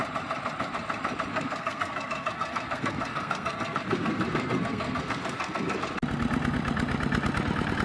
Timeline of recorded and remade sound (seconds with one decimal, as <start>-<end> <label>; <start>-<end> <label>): 0.0-1.3 recorded; 1.3-5.8 remade; 5.8-7.8 recorded

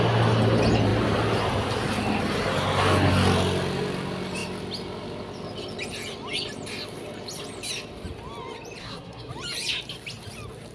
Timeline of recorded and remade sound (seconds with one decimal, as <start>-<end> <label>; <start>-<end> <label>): 0.0-8.8 recorded; 8.8-9.3 remade; 9.3-10.7 recorded

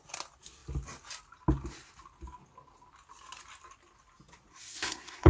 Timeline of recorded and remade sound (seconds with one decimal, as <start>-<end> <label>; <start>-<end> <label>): 0.0-4.5 recorded; 4.5-5.3 remade

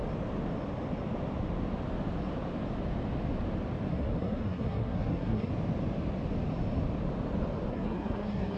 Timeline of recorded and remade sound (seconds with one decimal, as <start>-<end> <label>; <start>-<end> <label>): 0.0-3.9 recorded; 3.9-5.5 remade; 5.5-7.7 recorded; 7.7-8.6 remade

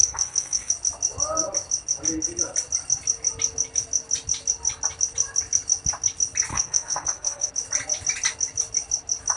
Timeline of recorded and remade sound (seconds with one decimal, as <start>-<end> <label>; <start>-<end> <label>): 0.0-0.7 remade; 0.7-6.5 recorded; 6.5-7.5 remade; 7.5-9.4 recorded

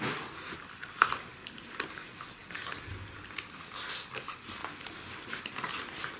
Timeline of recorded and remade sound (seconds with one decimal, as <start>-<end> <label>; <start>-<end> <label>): 0.0-6.2 recorded